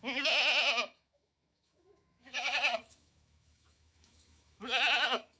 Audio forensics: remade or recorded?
remade